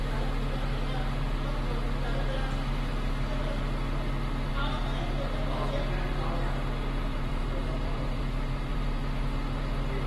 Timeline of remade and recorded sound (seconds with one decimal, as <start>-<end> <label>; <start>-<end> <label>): 0.0-7.1 recorded; 7.1-9.0 remade; 9.0-10.1 recorded